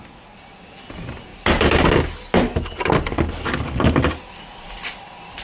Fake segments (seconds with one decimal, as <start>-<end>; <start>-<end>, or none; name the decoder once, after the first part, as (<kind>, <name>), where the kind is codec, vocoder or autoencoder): none